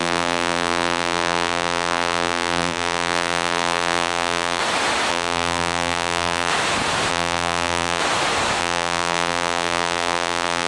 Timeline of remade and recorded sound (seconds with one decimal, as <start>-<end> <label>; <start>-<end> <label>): 0.0-4.6 remade; 4.6-5.1 recorded; 5.1-6.5 remade; 6.5-7.1 recorded; 7.1-8.0 remade; 8.0-8.6 recorded; 8.6-10.7 remade